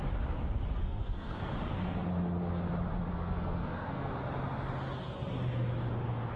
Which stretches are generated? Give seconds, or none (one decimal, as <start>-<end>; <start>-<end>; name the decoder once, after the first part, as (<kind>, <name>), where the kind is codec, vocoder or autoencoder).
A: 0.8-1.5 (codec, SNAC); 3.1-4.1